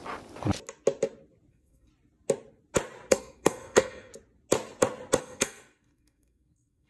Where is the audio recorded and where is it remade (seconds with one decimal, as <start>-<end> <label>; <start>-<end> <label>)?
0.0-1.5 recorded; 1.5-1.9 remade; 1.9-3.1 recorded; 3.1-4.1 remade; 4.1-5.2 recorded; 5.2-6.9 remade